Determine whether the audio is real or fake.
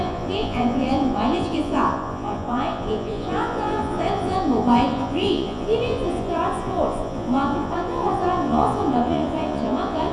fake